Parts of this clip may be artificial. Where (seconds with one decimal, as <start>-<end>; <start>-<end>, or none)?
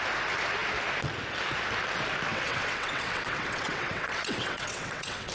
2.3-5.3